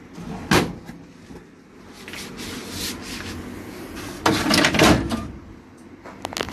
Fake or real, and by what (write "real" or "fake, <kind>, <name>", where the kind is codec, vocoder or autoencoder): real